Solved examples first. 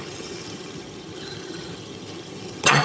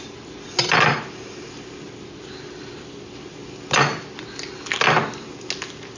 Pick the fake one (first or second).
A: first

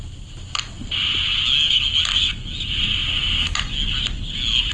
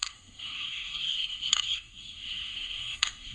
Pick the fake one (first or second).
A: second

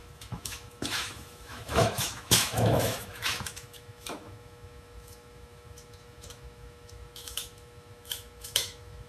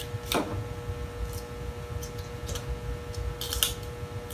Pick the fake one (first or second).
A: first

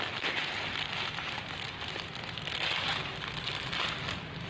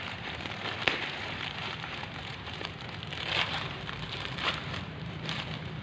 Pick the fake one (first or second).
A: second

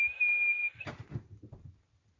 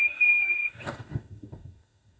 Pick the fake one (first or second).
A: second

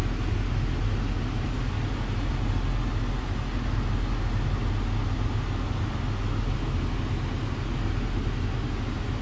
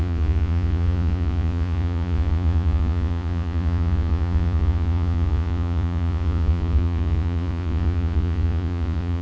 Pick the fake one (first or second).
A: second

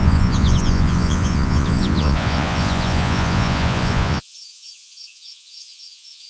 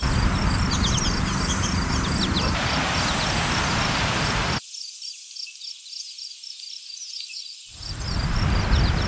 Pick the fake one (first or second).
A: first